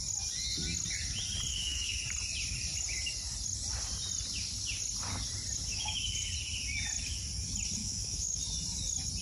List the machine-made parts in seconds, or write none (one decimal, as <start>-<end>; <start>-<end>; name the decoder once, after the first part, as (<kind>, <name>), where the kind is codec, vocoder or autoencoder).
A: 1.5-2.0 (autoencoder, DAC-VAE); 5.7-6.3; 7.8-8.4